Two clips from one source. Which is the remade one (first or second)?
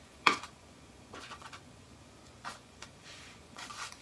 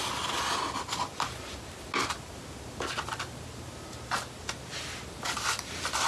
first